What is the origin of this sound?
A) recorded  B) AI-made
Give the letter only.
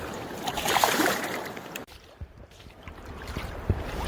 B